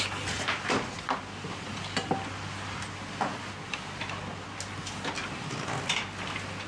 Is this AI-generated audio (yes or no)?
no